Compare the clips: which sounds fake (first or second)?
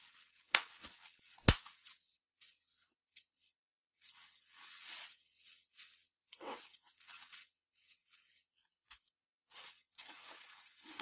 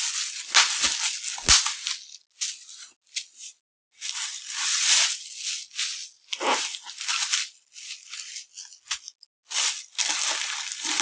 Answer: first